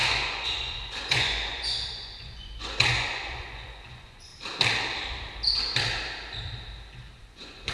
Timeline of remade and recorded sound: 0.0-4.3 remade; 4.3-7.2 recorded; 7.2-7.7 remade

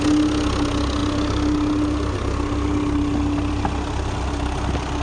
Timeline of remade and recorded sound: 0.0-5.0 recorded

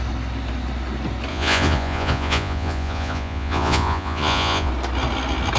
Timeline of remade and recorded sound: 0.0-1.3 recorded; 1.3-4.7 remade; 4.7-5.6 recorded

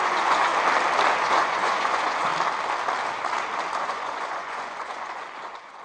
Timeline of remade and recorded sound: 0.0-0.5 remade; 0.5-1.1 recorded; 1.1-2.3 remade; 2.3-3.8 recorded; 3.8-5.8 remade

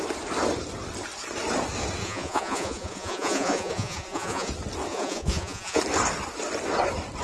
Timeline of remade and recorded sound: 0.0-2.0 recorded; 2.0-4.5 remade; 4.5-4.9 recorded; 4.9-5.8 remade; 5.8-7.2 recorded